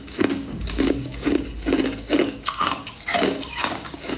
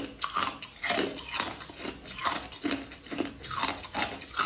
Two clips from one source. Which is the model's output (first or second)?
first